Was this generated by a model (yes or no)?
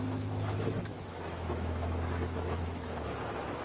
yes